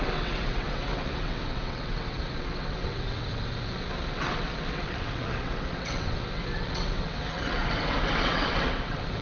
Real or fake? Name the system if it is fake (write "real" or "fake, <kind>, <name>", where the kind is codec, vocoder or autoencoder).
fake, vocoder, WaveNeXt